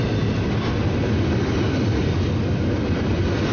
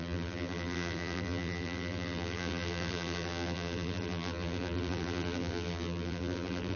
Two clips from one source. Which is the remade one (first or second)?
second